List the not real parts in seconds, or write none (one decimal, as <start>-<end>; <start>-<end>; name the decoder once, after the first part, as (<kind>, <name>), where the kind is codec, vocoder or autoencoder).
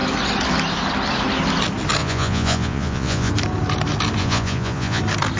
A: 2.0-3.3 (vocoder, Vocos); 4.2-5.0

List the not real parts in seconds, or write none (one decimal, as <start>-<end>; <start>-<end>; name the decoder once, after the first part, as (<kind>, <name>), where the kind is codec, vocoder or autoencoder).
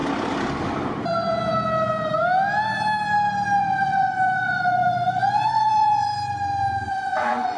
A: 3.6-6.1 (vocoder, Vocos); 6.9-7.6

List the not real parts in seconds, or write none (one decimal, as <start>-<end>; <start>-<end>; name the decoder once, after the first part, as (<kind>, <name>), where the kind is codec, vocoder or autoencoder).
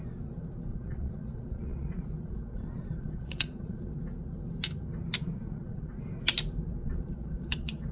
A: 0.7-4.0 (vocoder, Vocos); 5.2-6.0; 6.8-7.9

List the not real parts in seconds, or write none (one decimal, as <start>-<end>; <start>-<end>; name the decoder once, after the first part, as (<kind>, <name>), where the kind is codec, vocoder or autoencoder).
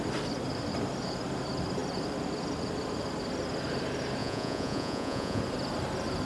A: 4.2-5.4 (vocoder, Vocos)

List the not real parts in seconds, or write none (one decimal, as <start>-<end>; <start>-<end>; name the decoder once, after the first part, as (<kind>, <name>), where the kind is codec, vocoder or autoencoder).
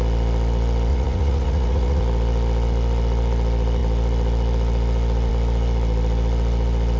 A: 0.9-2.0 (vocoder, Vocos)